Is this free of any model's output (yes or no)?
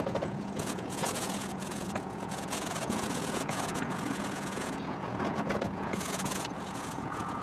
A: no